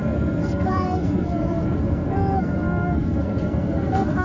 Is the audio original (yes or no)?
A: no